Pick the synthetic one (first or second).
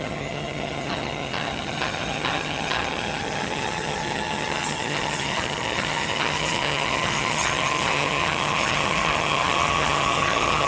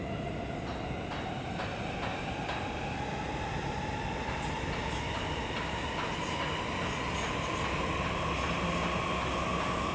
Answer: first